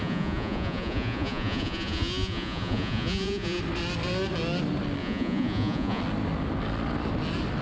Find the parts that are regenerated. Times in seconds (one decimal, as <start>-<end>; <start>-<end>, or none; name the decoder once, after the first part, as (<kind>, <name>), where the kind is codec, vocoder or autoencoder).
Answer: 0.0-3.6 (vocoder, Vocos); 5.0-6.0